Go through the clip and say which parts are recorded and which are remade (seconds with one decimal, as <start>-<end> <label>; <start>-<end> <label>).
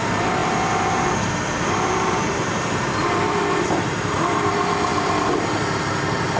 0.0-6.4 remade